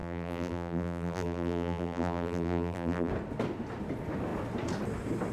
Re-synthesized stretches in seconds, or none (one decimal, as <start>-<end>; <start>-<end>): 0.0-3.1